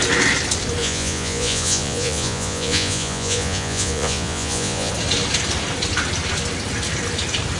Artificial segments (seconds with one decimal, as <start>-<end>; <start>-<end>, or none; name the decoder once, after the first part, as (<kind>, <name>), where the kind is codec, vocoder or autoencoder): 0.8-4.9 (vocoder, Vocos)